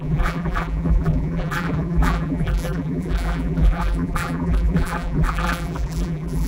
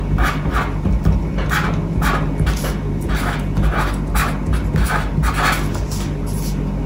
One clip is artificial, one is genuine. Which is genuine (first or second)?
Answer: second